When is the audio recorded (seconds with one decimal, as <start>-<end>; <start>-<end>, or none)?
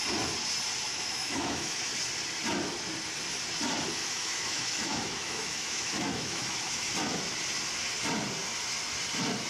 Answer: 0.0-0.9; 1.9-4.0; 6.9-9.5